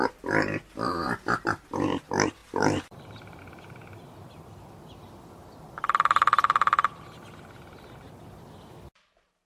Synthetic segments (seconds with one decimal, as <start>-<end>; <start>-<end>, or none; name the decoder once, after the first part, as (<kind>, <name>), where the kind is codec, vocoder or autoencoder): 2.4-3.4 (vocoder, BigVGAN v2)